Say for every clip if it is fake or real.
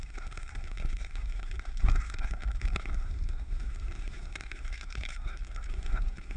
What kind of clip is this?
fake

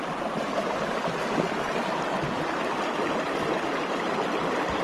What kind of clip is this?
real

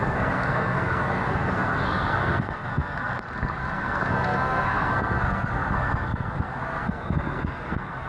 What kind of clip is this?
fake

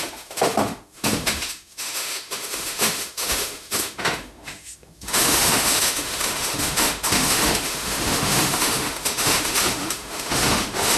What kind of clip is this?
fake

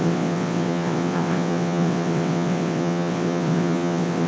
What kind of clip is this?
fake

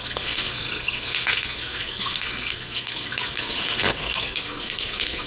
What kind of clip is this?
fake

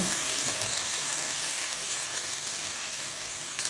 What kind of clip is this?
fake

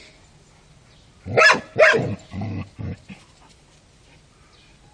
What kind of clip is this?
real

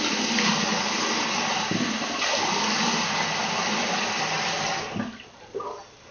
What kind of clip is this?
real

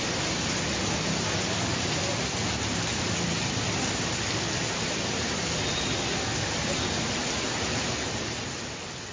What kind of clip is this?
real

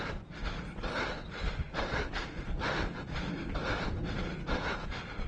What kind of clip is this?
real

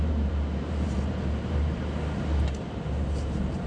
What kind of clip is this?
fake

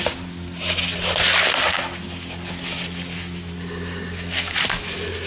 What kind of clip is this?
real